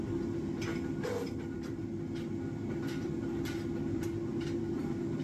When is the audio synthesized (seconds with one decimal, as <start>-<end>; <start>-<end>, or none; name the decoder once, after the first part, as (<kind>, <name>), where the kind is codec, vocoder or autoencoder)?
none